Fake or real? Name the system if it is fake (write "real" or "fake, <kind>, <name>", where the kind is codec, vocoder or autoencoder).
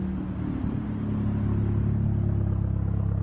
real